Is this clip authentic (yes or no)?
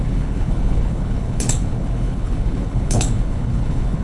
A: no